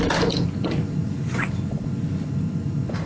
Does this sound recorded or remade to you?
recorded